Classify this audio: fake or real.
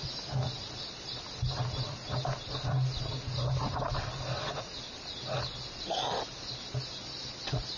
real